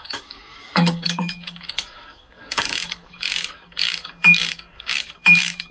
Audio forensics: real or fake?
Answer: fake